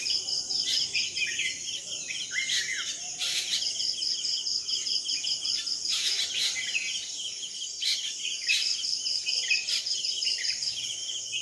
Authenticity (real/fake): fake